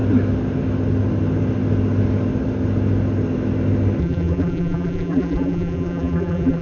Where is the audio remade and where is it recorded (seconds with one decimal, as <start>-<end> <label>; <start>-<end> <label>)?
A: 0.0-4.0 recorded; 4.0-6.6 remade